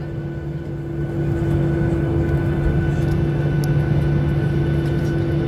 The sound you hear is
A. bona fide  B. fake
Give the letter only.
A